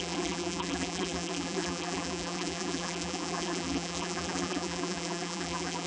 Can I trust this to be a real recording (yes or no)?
no